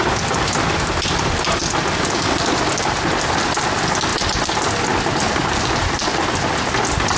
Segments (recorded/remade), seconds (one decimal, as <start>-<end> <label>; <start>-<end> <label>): 0.0-7.2 recorded